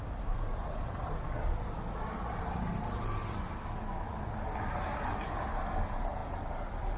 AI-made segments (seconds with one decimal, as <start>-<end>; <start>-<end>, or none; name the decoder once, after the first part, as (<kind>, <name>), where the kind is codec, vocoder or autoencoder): none